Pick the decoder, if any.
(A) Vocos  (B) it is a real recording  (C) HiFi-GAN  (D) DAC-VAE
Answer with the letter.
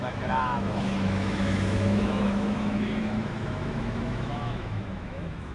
D